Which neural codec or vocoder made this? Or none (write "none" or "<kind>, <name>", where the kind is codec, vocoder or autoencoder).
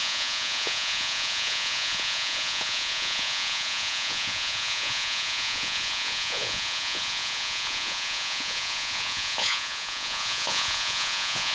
vocoder, Vocos